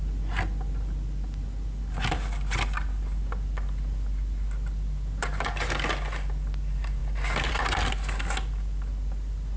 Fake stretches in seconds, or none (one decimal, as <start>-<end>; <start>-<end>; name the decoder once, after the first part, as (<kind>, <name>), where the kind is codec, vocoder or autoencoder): none